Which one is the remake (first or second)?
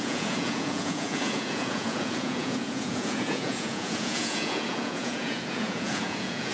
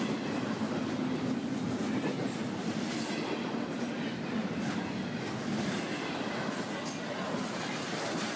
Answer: first